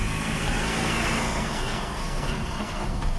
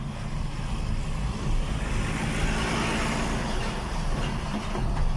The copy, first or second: first